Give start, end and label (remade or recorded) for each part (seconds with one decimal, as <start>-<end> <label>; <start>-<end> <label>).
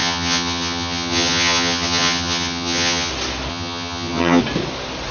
0.0-3.1 remade; 3.1-3.5 recorded; 3.5-4.4 remade; 4.4-5.1 recorded